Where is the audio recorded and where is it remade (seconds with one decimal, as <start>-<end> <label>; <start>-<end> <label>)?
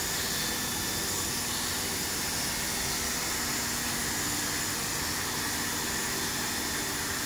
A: 0.0-7.3 recorded